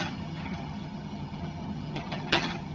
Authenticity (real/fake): fake